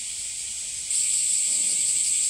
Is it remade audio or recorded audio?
recorded